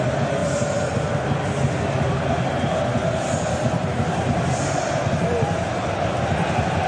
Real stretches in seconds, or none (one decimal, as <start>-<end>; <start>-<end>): 0.0-6.9